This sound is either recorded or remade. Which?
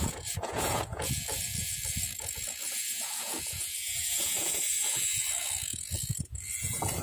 remade